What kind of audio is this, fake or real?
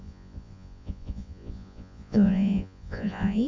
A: fake